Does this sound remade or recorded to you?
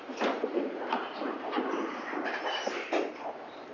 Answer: remade